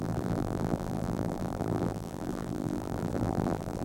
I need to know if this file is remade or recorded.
remade